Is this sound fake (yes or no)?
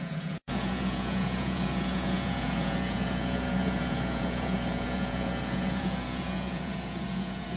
yes